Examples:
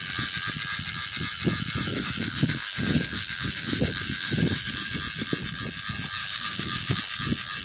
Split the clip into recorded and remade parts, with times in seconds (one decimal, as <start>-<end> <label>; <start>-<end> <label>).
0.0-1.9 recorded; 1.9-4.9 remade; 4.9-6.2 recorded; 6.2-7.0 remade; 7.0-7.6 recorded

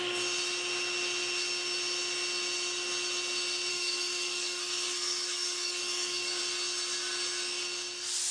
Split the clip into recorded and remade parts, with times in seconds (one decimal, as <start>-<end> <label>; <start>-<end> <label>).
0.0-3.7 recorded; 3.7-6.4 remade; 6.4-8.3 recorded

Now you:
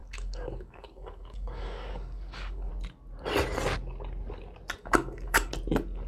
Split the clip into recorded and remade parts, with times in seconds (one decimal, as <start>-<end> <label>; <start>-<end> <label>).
0.0-2.7 remade; 2.7-4.8 recorded; 4.8-5.5 remade; 5.5-6.1 recorded

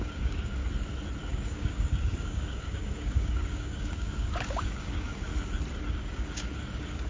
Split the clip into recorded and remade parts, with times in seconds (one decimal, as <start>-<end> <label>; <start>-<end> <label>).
0.0-0.6 remade; 0.6-1.2 recorded; 1.2-5.3 remade; 5.3-5.9 recorded; 5.9-7.1 remade